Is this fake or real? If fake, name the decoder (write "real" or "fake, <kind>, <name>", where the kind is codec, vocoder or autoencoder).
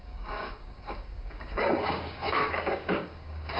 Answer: fake, codec, DAC